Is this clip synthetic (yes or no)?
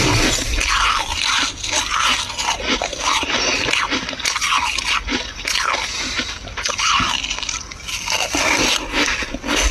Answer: no